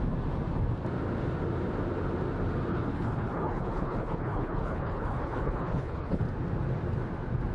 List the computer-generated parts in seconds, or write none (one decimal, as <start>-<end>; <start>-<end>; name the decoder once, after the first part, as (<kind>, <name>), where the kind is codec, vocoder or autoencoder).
2.7-6.2 (codec, HILCodec)